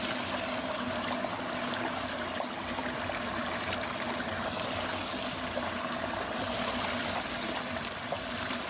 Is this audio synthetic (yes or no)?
no